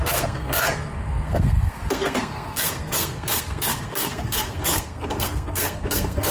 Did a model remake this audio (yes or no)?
yes